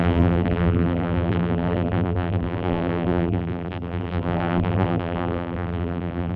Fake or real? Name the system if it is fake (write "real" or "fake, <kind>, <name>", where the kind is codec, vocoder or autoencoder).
fake, vocoder, BigVGAN v2